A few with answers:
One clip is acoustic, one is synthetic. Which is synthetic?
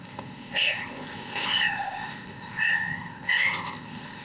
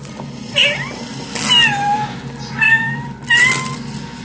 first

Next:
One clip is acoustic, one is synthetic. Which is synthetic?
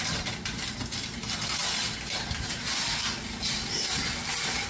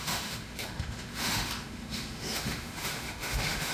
second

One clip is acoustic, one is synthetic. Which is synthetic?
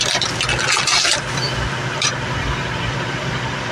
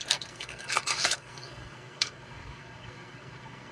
second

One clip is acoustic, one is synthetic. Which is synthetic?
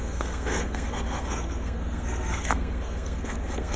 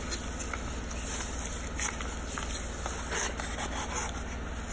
first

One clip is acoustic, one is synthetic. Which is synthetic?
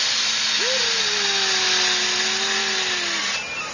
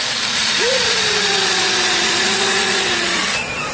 second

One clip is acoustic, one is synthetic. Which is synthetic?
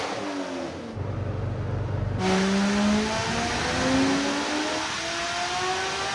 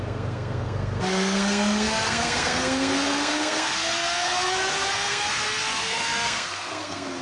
second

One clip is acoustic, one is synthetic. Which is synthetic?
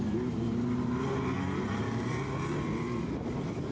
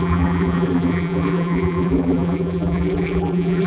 second